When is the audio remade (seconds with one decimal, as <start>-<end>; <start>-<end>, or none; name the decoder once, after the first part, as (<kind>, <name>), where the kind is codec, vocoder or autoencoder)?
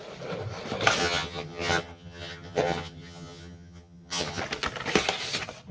1.0-4.4 (vocoder, HiFi-GAN)